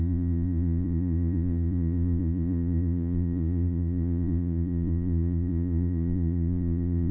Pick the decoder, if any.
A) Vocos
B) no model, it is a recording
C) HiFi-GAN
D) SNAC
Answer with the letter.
A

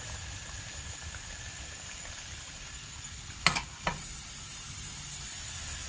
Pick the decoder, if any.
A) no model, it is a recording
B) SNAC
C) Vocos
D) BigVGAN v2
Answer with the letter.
A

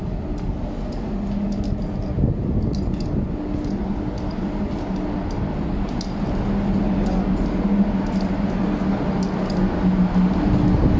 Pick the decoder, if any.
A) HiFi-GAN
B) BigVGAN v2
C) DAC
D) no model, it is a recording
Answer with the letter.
D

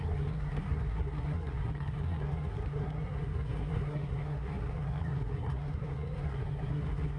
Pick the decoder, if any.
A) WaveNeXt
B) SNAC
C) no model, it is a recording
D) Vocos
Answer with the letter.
B